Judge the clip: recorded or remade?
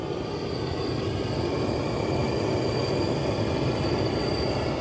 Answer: recorded